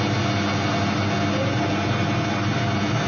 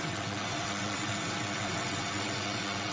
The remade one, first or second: second